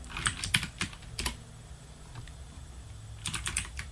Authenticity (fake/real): real